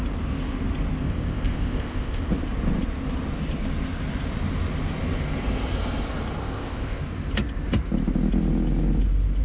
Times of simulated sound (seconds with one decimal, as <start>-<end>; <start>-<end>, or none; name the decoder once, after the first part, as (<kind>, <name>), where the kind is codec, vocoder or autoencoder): 1.0-2.3 (codec, ZipCodec); 6.4-7.0